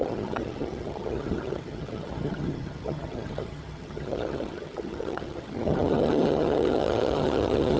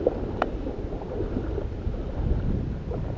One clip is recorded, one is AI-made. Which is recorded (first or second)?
second